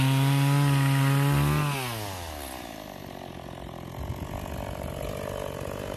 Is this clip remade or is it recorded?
recorded